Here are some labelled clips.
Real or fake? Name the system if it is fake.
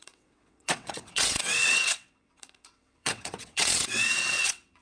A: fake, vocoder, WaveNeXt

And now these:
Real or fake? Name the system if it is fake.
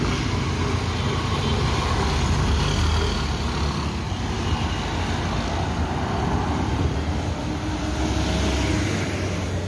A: real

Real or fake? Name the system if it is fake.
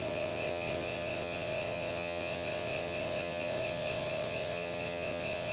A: fake, vocoder, WaveNeXt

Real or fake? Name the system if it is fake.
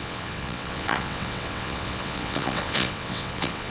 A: fake, vocoder, WaveNeXt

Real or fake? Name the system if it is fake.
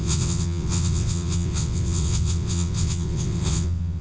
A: fake, vocoder, WaveNeXt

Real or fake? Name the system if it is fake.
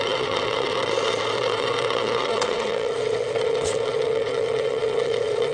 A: fake, vocoder, WaveNeXt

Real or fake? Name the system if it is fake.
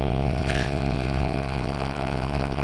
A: fake, vocoder, WaveNeXt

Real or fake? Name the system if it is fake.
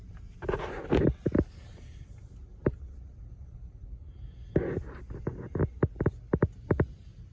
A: real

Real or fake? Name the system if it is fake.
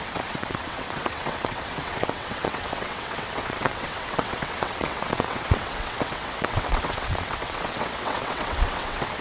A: fake, vocoder, WaveNeXt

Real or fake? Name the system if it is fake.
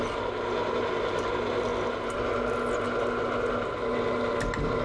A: real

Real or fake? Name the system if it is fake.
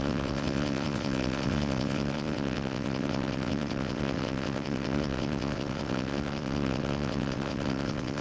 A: fake, vocoder, WaveNeXt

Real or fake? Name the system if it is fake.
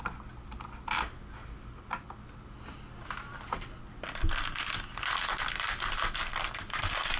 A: real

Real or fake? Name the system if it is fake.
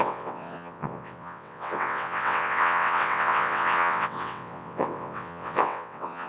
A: fake, vocoder, WaveNeXt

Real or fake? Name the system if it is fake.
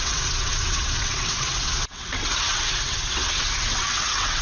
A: fake, vocoder, WaveNeXt